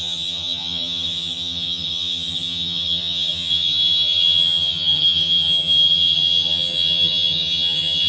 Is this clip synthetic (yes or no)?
yes